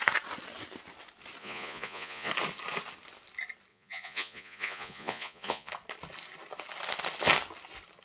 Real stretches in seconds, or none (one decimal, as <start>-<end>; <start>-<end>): 0.0-1.4; 2.3-3.7; 5.7-8.0